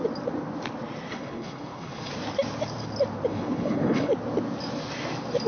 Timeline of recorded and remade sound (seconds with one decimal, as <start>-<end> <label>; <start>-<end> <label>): 0.0-1.1 recorded; 1.1-2.1 remade; 2.1-3.3 recorded; 3.3-4.1 remade; 4.1-5.5 recorded

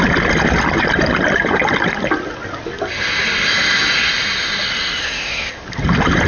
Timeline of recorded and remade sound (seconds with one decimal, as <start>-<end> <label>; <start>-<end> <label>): 0.0-5.0 recorded; 5.0-5.6 remade; 5.6-6.3 recorded

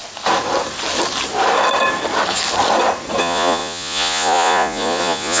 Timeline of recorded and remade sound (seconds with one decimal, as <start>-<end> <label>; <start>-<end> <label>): 0.0-3.2 recorded; 3.2-5.4 remade